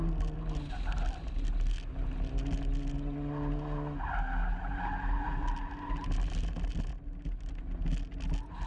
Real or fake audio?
real